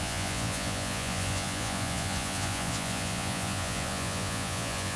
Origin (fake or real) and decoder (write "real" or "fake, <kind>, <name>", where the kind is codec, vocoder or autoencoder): fake, vocoder, Vocos